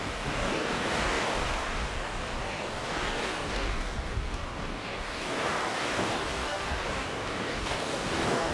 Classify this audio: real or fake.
fake